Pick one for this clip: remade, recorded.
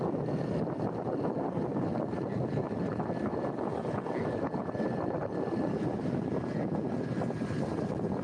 recorded